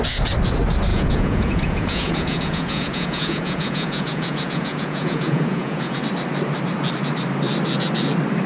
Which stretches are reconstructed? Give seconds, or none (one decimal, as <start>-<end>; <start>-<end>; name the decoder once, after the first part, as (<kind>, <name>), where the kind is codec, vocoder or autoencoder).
0.9-6.0 (vocoder, Vocos)